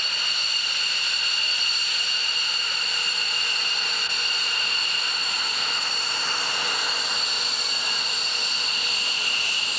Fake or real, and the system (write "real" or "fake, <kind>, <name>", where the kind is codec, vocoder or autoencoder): real